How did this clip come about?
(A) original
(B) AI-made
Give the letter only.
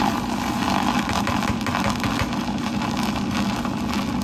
A